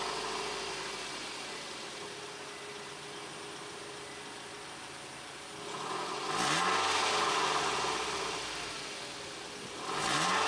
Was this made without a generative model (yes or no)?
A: yes